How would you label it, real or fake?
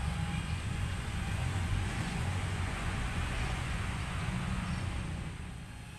fake